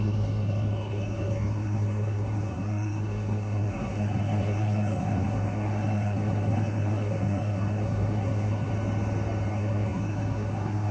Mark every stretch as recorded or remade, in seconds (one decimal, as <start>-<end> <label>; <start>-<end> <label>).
0.0-8.7 remade; 8.7-9.5 recorded; 9.5-10.9 remade